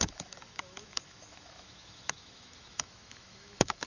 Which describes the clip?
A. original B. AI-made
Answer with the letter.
B